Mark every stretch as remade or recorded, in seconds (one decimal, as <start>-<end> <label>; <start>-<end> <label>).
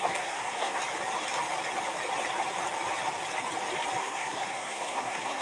0.0-0.8 remade; 0.8-4.0 recorded; 4.0-5.4 remade